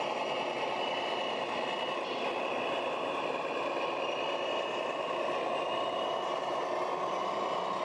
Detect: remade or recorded recorded